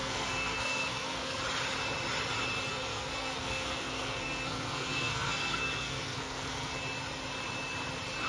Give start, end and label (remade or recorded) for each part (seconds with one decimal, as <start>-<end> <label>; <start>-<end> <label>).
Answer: 0.0-1.4 remade; 1.4-2.7 recorded; 2.7-6.8 remade; 6.8-8.3 recorded